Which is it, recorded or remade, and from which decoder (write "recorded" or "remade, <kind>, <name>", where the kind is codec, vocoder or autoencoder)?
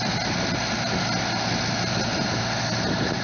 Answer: recorded